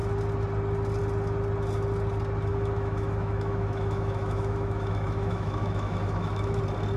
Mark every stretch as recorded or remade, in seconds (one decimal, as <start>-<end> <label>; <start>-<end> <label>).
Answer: 0.0-2.5 recorded; 2.5-6.6 remade; 6.6-7.0 recorded